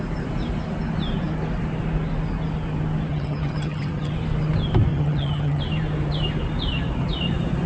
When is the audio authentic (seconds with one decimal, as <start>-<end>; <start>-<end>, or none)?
0.0-3.1; 4.1-4.9; 5.6-7.7